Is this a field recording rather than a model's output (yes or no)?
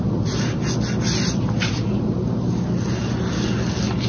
yes